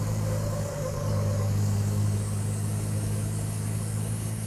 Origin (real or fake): fake